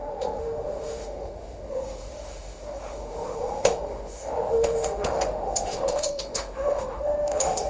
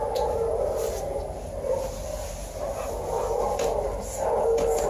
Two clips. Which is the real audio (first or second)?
second